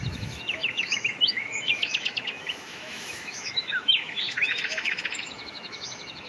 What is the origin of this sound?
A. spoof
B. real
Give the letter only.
A